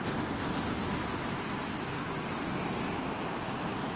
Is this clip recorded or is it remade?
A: recorded